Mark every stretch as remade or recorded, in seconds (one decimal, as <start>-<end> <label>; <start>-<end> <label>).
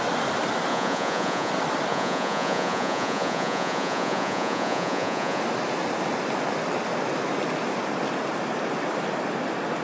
0.0-0.7 recorded; 0.7-1.5 remade; 1.5-1.9 recorded; 1.9-5.4 remade; 5.4-9.8 recorded